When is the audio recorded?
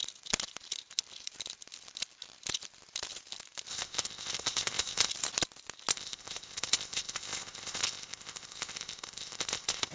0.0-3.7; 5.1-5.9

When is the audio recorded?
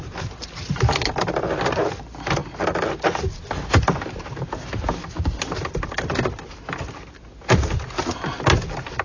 0.0-9.0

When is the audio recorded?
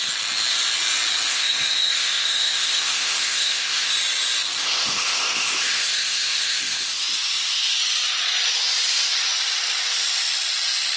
0.0-1.3; 3.9-4.6; 7.0-11.0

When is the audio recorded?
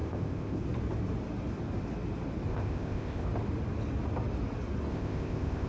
0.6-2.5; 3.3-4.9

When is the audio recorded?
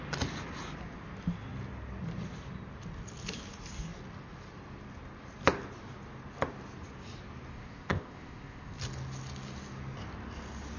0.0-7.5; 8.8-10.8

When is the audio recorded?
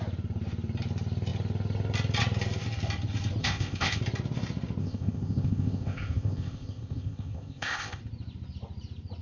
0.0-3.4; 4.0-4.8; 8.0-9.2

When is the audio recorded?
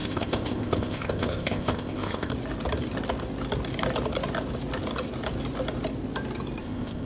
2.3-6.6